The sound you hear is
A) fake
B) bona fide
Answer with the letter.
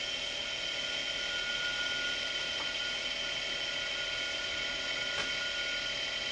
B